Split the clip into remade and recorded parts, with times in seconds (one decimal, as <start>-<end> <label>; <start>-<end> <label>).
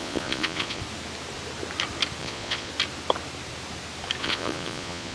0.0-0.8 remade; 0.8-2.2 recorded; 2.2-2.7 remade; 2.7-4.2 recorded; 4.2-5.1 remade